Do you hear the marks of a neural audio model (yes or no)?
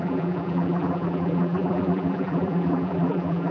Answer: yes